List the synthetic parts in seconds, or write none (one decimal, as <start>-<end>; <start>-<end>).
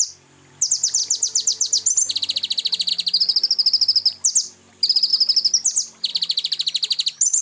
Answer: none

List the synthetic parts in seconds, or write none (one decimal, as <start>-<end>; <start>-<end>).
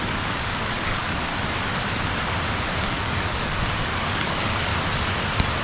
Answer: 0.0-1.3; 2.8-4.7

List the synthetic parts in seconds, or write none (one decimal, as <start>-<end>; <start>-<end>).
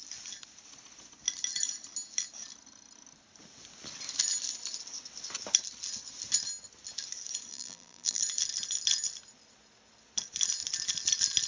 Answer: 7.5-8.2